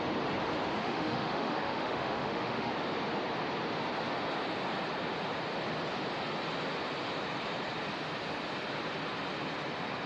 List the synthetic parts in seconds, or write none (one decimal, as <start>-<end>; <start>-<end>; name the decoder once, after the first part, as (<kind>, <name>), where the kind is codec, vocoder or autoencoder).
0.8-2.7 (autoencoder, DAC-VAE)